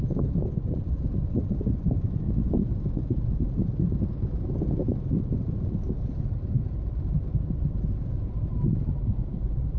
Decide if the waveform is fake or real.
fake